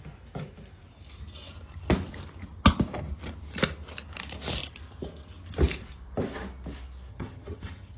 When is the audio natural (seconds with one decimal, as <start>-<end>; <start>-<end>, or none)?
0.0-7.1